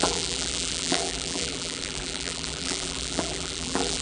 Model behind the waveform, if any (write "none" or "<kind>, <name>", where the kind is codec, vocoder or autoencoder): vocoder, BigVGAN v2